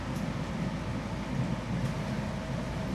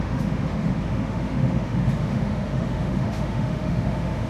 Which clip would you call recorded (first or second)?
first